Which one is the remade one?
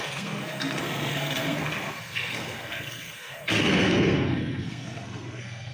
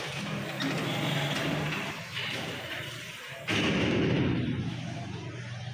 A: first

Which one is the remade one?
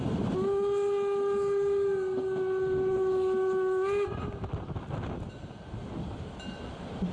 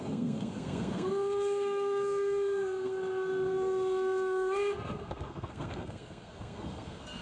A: second